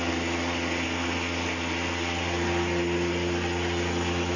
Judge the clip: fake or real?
real